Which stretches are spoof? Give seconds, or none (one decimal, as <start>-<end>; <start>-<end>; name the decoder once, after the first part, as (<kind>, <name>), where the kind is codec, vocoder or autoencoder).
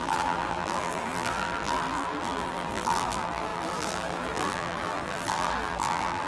0.0-6.3 (vocoder, BigVGAN v2)